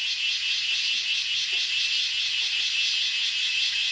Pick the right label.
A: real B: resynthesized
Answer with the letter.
A